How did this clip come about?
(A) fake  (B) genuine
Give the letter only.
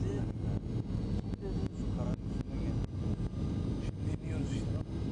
B